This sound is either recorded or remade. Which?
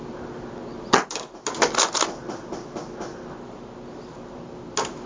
recorded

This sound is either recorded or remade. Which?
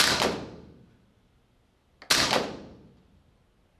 recorded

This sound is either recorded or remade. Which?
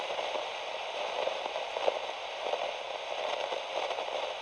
remade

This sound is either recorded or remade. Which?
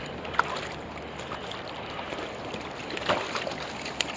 recorded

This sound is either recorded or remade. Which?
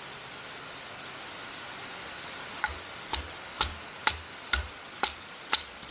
recorded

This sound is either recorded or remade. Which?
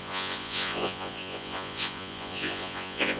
remade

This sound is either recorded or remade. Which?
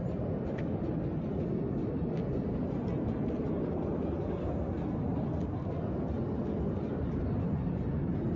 recorded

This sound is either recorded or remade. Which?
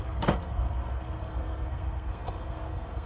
remade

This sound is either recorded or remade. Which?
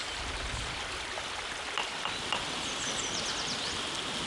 recorded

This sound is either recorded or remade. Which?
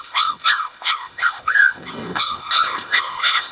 remade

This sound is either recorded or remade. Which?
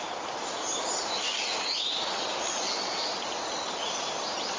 recorded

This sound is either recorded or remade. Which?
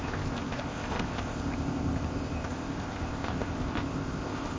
remade